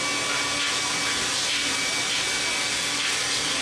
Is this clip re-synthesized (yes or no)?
no